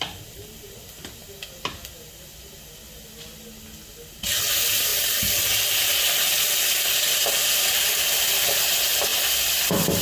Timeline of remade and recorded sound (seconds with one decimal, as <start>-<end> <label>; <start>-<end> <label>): 0.0-10.0 recorded